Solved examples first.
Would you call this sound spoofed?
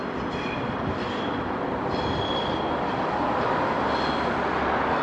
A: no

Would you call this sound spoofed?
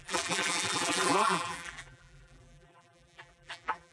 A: yes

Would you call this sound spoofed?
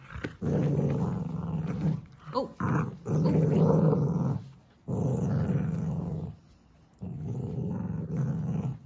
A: no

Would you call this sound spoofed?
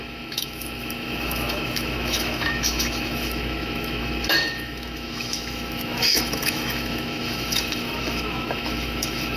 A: yes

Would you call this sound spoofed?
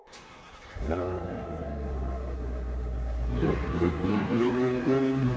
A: yes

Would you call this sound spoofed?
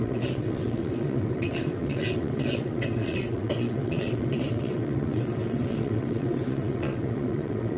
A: yes